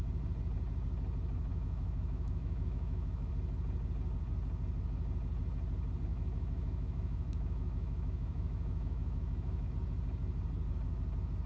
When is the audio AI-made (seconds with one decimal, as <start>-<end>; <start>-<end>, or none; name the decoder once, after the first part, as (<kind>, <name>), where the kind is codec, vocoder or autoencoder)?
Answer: 1.5-3.3 (autoencoder, DAC-VAE); 6.1-9.7

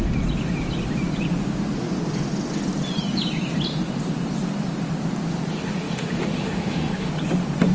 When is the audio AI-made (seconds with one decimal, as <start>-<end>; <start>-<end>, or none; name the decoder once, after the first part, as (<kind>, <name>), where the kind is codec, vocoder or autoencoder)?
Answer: 5.5-7.1 (autoencoder, DAC-VAE)

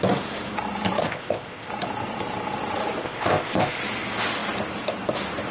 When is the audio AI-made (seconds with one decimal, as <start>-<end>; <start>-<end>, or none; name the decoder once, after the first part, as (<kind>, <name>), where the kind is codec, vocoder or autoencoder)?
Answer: 1.0-1.7 (codec, ZipCodec); 3.0-3.8

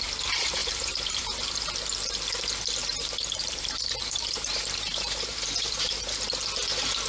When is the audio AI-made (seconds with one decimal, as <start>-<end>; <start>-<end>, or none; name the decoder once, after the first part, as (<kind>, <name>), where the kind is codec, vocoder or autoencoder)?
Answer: 0.6-1.4 (vocoder, BigVGAN v2); 2.8-6.0